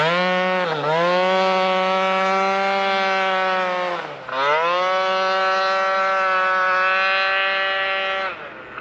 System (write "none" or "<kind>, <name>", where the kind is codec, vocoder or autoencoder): none